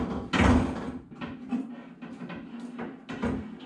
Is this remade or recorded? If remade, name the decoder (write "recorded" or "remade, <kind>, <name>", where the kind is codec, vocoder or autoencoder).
recorded